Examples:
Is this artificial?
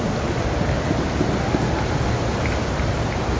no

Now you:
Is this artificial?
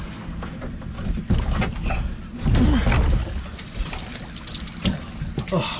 no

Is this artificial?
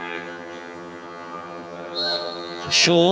yes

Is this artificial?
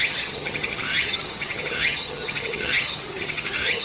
yes